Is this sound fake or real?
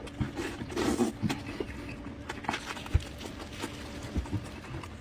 real